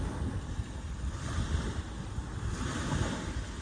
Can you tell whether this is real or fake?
real